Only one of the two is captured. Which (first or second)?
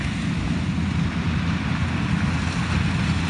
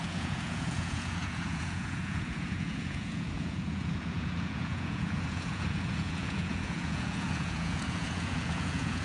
first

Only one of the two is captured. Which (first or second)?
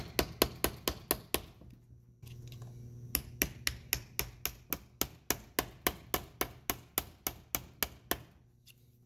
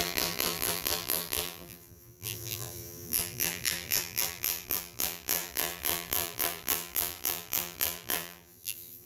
first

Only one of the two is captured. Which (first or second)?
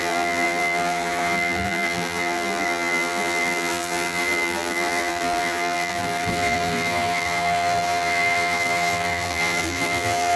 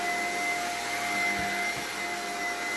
second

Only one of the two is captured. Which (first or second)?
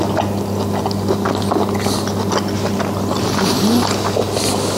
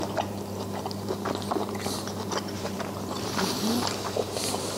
first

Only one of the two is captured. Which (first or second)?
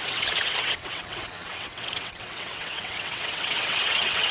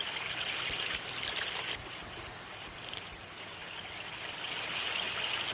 second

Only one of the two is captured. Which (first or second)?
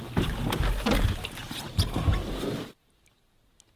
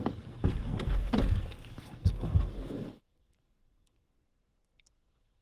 first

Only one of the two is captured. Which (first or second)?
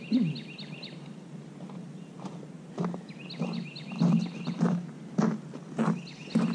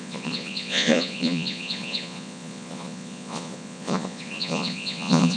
first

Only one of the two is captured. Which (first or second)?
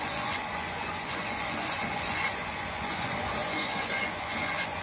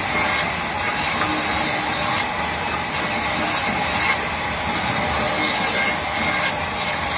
second